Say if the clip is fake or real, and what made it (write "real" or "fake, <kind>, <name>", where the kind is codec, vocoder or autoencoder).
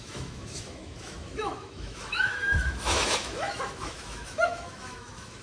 fake, autoencoder, DAC-VAE